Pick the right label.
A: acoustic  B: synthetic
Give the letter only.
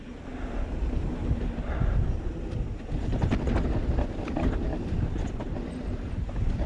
A